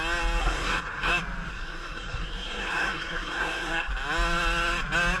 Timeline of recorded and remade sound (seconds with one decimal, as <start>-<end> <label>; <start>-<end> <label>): 0.0-0.4 recorded; 0.4-1.1 remade; 1.1-1.5 recorded; 1.5-3.9 remade; 3.9-5.2 recorded